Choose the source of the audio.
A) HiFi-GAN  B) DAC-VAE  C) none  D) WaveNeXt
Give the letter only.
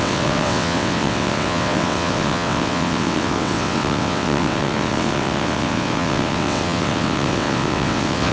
D